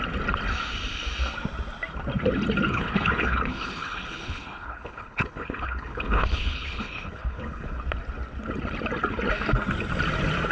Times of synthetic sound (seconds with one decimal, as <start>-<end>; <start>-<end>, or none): 2.7-7.8